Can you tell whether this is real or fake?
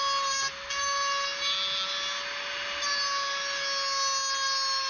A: real